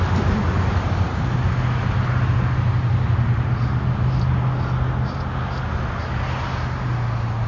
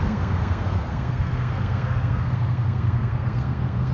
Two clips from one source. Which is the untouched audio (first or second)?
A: first